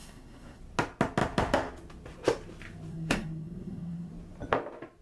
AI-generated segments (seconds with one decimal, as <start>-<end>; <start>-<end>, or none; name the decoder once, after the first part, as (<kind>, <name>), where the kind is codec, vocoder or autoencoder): 0.0-0.6 (codec, SNAC); 2.9-4.1